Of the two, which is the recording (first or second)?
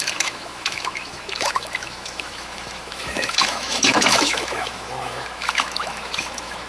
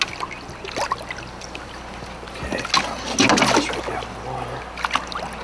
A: second